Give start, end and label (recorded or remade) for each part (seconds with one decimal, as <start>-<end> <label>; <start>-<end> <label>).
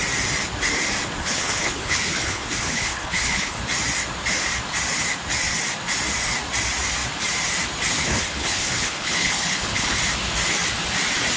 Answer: 0.0-1.2 recorded; 1.2-3.6 remade; 3.6-7.9 recorded; 7.9-10.0 remade; 10.0-11.4 recorded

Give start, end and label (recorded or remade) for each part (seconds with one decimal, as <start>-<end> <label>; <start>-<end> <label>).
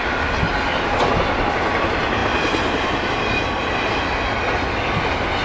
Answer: 0.0-5.4 recorded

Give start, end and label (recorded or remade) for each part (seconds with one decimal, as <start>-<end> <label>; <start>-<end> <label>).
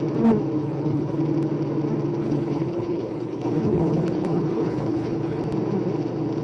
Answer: 0.0-0.6 recorded; 0.6-1.2 remade; 1.2-2.2 recorded; 2.2-5.4 remade; 5.4-6.4 recorded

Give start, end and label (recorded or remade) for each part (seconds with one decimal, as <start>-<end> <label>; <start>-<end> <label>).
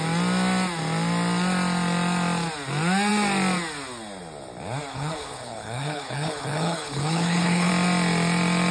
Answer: 0.0-4.9 recorded; 4.9-7.7 remade; 7.7-8.7 recorded